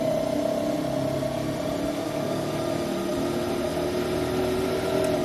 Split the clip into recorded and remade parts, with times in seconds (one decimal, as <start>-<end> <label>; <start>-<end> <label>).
0.0-1.9 recorded; 1.9-2.5 remade; 2.5-5.2 recorded